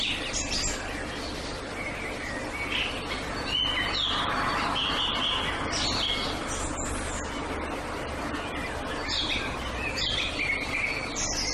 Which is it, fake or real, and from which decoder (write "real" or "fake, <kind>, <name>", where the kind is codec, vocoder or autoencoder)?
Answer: real